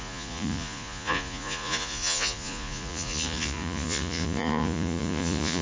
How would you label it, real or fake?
fake